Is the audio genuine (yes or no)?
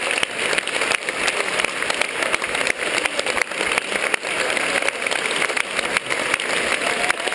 yes